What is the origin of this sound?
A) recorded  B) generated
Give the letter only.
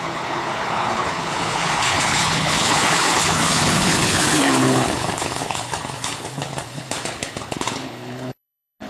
B